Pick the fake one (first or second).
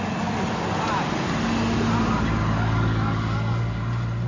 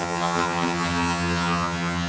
second